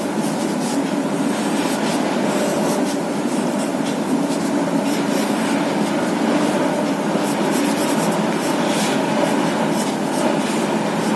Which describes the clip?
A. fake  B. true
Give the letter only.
B